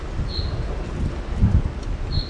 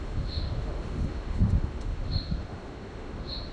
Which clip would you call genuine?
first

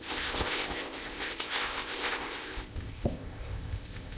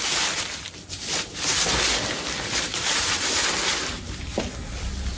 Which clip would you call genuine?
second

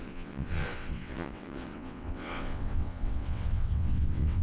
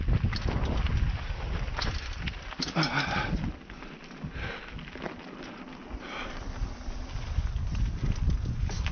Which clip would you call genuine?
second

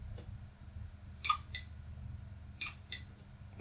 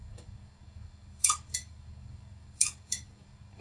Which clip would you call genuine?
first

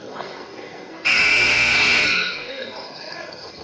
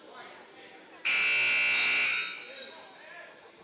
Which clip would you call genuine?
second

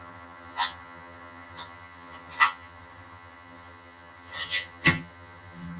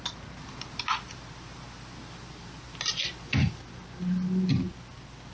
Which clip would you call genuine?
second